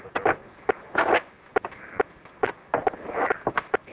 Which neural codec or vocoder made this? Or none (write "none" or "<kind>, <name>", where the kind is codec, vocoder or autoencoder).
none